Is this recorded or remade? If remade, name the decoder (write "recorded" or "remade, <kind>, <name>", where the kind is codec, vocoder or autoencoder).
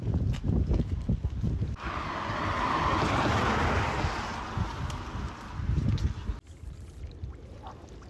recorded